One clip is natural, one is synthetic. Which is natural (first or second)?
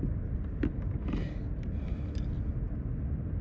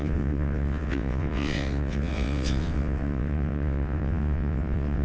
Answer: first